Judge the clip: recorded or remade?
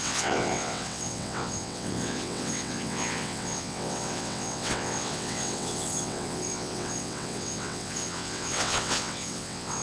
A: remade